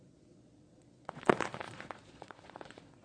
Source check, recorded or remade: remade